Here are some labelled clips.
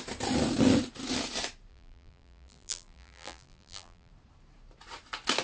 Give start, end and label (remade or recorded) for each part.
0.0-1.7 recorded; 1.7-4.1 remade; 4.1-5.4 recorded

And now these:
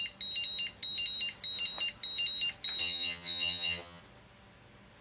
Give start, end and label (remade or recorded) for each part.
0.0-2.8 recorded; 2.8-4.0 remade; 4.0-5.0 recorded

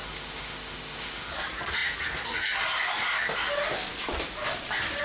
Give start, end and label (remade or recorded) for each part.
0.0-1.3 remade; 1.3-5.0 recorded

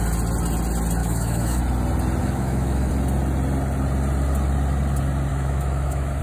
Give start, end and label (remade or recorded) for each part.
0.0-1.0 recorded; 1.0-1.6 remade; 1.6-2.2 recorded; 2.2-2.9 remade; 2.9-5.3 recorded; 5.3-6.2 remade

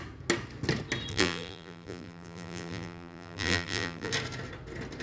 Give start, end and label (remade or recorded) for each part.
0.0-1.1 recorded; 1.1-4.1 remade; 4.1-5.0 recorded